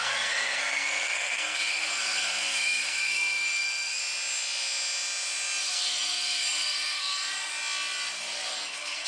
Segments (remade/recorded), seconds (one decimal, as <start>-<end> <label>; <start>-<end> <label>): 0.0-4.0 remade; 4.0-5.6 recorded; 5.6-7.5 remade; 7.5-8.5 recorded; 8.5-9.1 remade